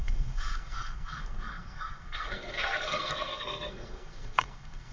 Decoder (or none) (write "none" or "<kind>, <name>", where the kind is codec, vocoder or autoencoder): codec, SNAC